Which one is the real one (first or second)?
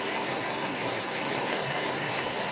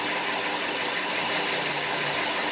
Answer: second